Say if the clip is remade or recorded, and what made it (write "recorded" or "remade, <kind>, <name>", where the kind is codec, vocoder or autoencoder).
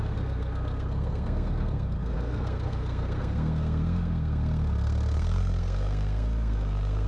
remade, codec, SNAC